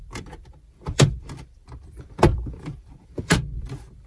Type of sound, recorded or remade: remade